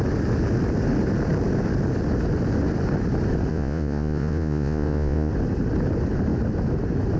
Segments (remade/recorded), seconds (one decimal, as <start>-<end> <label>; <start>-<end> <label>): 0.0-3.5 recorded; 3.5-5.3 remade; 5.3-7.2 recorded